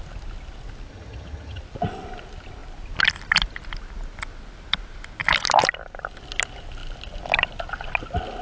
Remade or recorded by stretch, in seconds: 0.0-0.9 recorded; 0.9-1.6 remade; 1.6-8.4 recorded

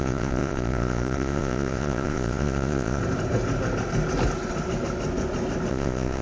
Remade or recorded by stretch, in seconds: 0.0-3.0 remade; 3.0-5.7 recorded; 5.7-6.2 remade

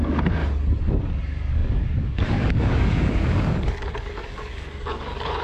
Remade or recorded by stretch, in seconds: 0.0-0.4 remade; 0.4-1.2 recorded; 1.2-5.4 remade

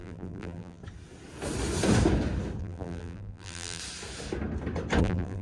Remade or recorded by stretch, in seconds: 0.0-0.8 remade; 0.8-2.6 recorded; 2.6-3.8 remade; 3.8-5.0 recorded; 5.0-5.4 remade

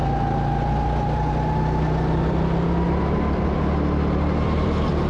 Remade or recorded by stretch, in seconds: 0.0-5.1 recorded

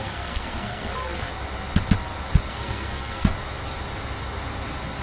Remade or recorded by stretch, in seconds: 0.0-1.3 remade; 1.3-2.5 recorded; 2.5-3.3 remade; 3.3-5.0 recorded